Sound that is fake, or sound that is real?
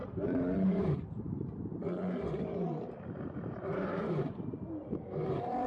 fake